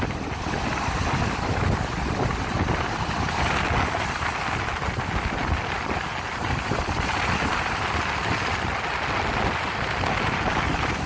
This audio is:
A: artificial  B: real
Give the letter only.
B